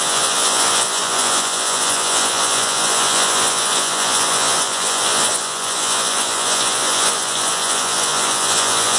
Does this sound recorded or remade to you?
remade